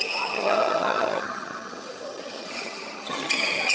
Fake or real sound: fake